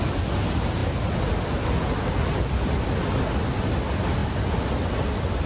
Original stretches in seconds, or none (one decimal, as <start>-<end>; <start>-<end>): 0.0-5.5